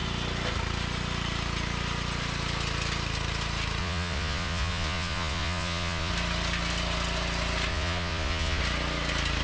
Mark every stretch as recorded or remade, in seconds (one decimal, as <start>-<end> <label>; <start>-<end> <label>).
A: 0.0-3.8 recorded; 3.8-6.1 remade; 6.1-7.7 recorded; 7.7-8.6 remade; 8.6-9.4 recorded